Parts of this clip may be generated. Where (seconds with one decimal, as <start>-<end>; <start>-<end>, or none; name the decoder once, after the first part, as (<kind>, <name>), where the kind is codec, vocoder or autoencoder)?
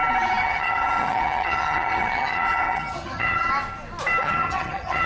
0.4-3.5 (vocoder, HiFi-GAN); 4.2-5.1